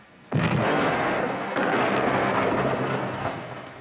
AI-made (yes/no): yes